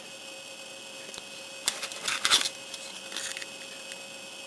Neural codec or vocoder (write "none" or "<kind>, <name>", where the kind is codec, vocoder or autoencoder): none